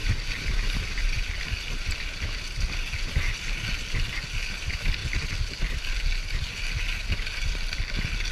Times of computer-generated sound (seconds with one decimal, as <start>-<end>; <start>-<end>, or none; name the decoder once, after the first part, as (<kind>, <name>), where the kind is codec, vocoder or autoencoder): none